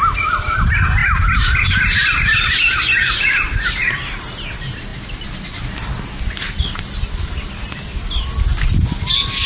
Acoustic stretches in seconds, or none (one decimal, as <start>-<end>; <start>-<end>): 0.0-9.5